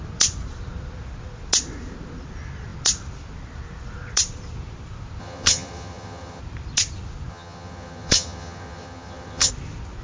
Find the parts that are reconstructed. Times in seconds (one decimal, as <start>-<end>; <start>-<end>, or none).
5.2-6.4; 7.3-9.5